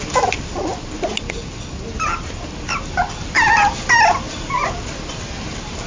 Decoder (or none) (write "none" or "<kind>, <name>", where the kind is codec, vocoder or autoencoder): none